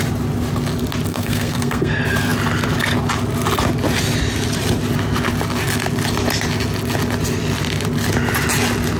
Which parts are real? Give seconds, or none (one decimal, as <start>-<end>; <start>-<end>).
0.0-1.1; 1.9-9.0